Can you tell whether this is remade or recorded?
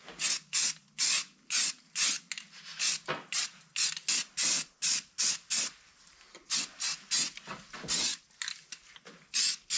recorded